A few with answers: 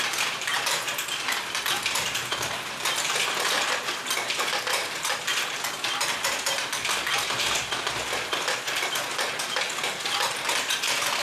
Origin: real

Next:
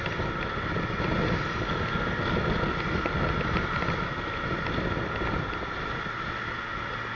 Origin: real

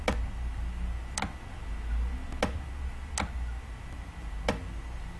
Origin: real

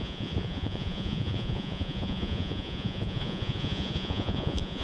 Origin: fake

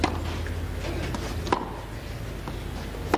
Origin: real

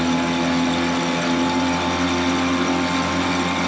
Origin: real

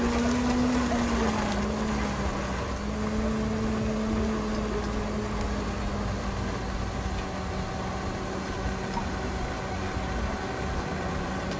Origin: real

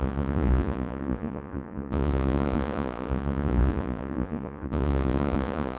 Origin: fake